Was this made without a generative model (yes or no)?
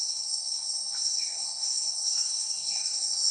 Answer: no